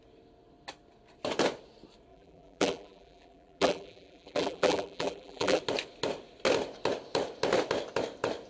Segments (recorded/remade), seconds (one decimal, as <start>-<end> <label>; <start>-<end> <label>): 0.0-2.1 recorded; 2.1-5.6 remade; 5.6-8.5 recorded